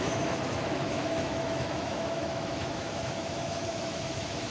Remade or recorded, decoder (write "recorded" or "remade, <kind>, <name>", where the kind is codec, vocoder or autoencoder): remade, autoencoder, DAC-VAE